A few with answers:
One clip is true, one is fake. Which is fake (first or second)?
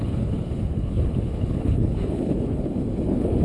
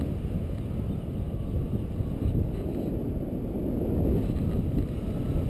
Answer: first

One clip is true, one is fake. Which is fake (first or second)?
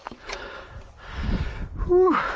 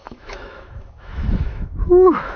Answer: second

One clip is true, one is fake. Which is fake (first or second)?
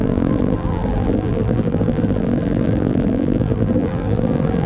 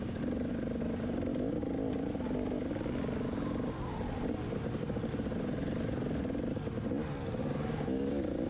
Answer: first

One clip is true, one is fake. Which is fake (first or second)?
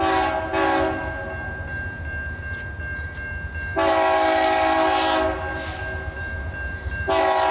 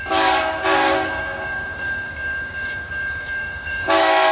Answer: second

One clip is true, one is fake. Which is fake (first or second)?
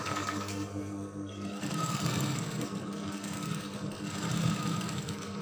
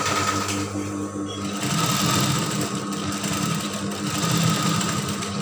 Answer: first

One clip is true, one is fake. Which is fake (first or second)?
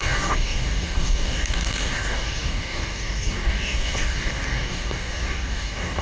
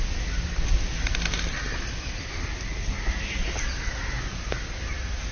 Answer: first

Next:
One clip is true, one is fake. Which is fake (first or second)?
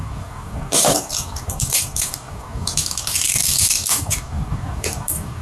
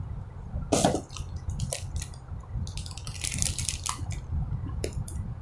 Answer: first